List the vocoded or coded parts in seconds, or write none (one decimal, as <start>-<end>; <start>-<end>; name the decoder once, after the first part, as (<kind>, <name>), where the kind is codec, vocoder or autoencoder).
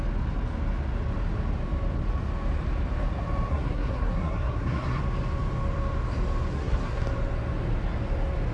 3.5-5.0 (codec, SNAC); 6.5-7.0